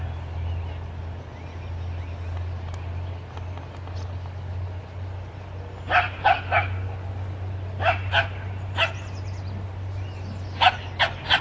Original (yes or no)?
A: yes